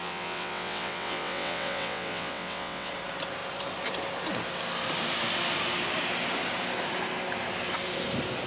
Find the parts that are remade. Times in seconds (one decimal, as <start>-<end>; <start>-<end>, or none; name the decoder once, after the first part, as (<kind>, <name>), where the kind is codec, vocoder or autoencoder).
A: 0.0-2.9 (vocoder, WaveNeXt)